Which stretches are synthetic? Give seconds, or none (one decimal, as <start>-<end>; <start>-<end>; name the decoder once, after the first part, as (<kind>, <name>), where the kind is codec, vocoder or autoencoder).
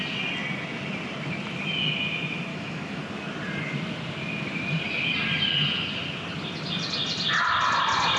2.5-3.0 (autoencoder, DAC-VAE)